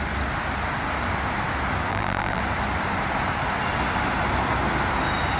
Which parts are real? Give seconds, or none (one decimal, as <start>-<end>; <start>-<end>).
0.0-1.9; 2.4-5.4